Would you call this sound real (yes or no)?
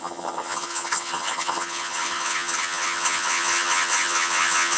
no